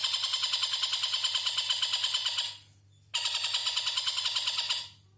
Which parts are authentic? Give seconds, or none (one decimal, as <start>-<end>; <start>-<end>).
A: 0.0-3.6; 4.2-5.2